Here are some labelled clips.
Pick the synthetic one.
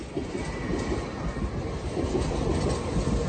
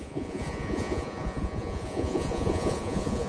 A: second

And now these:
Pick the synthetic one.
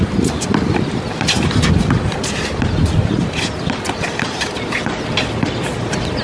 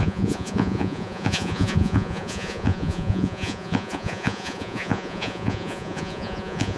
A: second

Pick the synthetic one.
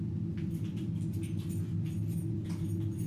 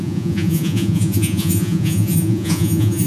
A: second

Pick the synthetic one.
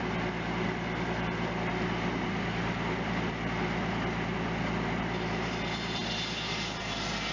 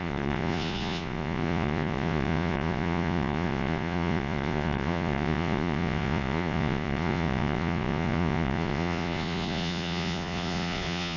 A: second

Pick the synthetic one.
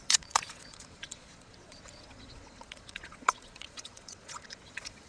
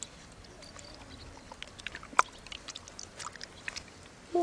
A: first